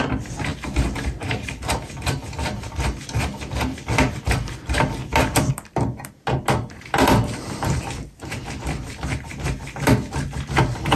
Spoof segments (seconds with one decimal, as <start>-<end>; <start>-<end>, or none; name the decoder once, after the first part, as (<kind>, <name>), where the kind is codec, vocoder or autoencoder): none